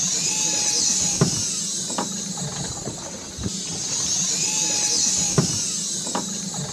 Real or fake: real